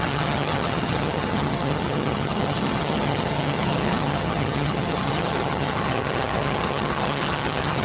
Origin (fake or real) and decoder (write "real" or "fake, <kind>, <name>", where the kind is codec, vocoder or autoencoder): fake, vocoder, HiFi-GAN